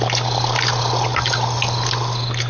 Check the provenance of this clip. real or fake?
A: real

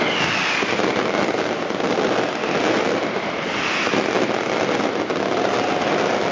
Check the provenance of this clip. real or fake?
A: real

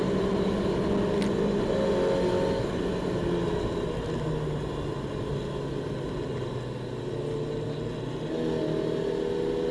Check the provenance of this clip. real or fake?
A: real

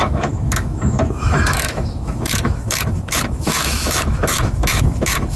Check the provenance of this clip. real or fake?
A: fake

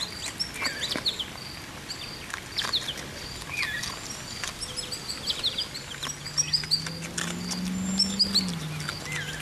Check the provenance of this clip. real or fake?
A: real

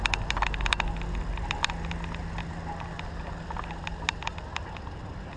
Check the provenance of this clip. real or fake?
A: real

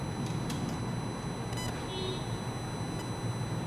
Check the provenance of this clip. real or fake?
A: real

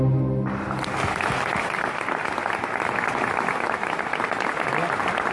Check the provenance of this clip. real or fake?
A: real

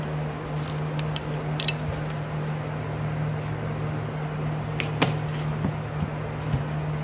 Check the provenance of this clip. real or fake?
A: real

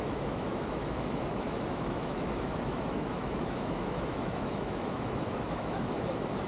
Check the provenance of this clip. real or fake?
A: fake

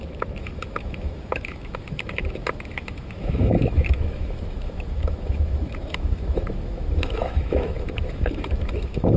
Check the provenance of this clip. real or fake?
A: fake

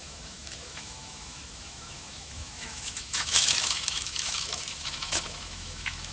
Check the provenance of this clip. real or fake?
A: fake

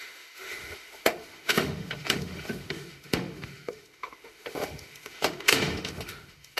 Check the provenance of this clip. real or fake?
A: fake